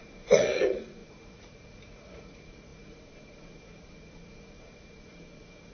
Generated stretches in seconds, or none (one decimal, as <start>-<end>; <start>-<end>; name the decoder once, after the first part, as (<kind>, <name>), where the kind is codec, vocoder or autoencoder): 0.0-5.7 (vocoder, Vocos)